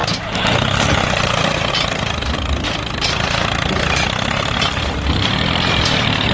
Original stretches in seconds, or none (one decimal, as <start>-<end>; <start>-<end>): 0.0-2.2